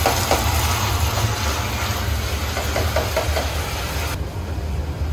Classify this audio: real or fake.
real